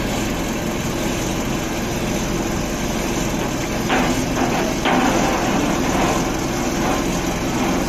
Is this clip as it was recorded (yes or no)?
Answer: yes